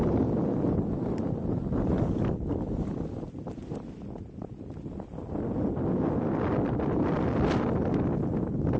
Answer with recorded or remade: recorded